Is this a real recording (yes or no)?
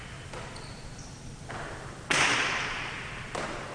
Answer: no